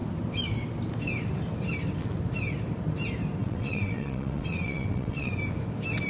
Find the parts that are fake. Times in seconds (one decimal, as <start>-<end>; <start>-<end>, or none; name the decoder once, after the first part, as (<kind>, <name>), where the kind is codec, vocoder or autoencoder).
3.4-5.3 (vocoder, WaveNeXt)